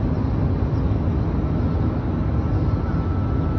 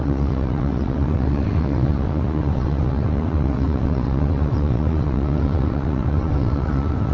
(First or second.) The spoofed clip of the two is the second